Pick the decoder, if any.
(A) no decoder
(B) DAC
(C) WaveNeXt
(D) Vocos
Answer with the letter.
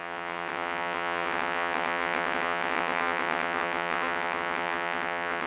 C